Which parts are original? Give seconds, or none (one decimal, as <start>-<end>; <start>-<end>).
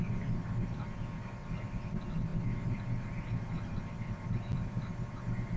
0.0-5.6